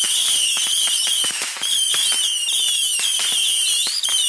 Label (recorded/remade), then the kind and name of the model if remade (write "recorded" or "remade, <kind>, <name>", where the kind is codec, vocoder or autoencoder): remade, vocoder, BigVGAN v2